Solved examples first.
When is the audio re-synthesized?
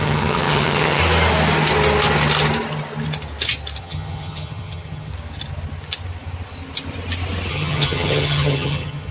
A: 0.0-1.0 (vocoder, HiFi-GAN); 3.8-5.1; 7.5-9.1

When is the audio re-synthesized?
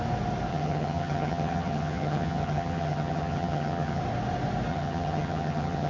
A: 0.5-4.0 (vocoder, HiFi-GAN); 4.7-5.9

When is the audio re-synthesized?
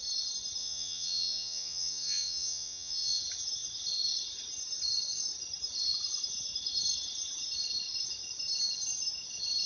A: 0.6-3.2 (vocoder, Vocos)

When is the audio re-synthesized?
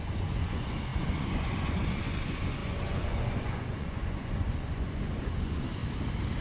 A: 0.0-5.8 (vocoder, Vocos)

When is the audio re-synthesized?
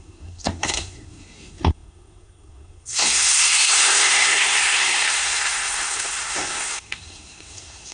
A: 0.0-7.9 (codec, SNAC)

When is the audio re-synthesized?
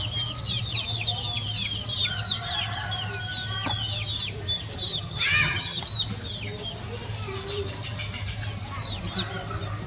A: 4.9-5.8 (vocoder, HiFi-GAN)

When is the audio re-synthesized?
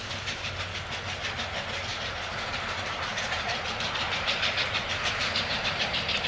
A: 1.9-5.6 (vocoder, BigVGAN v2)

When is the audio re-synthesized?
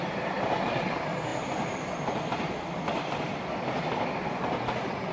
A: 1.3-4.4 (vocoder, BigVGAN v2)